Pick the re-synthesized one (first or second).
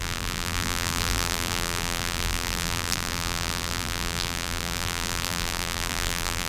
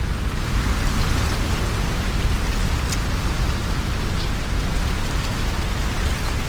first